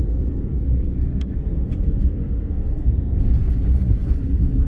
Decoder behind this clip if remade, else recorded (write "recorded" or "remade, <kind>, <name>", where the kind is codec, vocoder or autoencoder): remade, codec, SNAC